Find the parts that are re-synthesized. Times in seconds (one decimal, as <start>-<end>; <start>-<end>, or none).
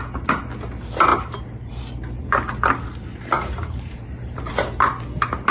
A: 1.1-1.7; 3.1-4.5